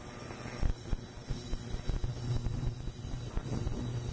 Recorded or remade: recorded